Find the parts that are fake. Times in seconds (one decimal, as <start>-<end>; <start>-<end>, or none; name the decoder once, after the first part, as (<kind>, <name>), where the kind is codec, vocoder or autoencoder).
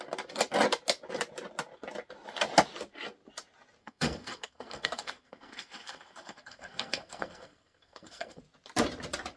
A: 3.8-8.4 (codec, SNAC)